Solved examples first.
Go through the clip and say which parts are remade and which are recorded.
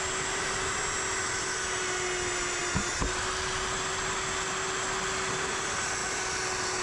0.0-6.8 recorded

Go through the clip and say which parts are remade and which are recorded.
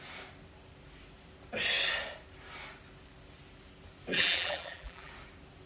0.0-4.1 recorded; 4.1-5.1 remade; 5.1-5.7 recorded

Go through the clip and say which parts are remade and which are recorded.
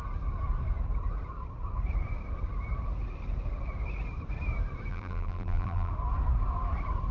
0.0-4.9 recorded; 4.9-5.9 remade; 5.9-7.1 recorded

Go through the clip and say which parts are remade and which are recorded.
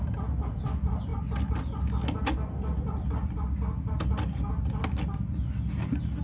0.0-6.2 recorded